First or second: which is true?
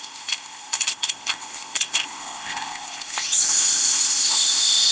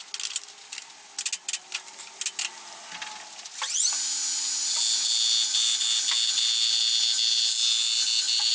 second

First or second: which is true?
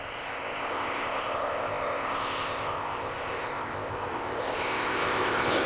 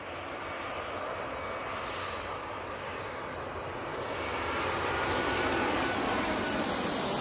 second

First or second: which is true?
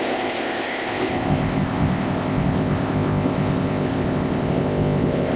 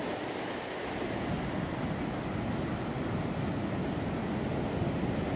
second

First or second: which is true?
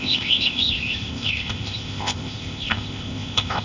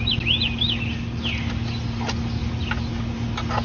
second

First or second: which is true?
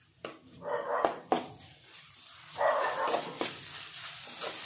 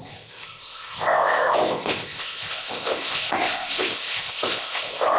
first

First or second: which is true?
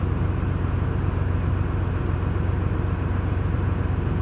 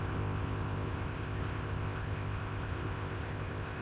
first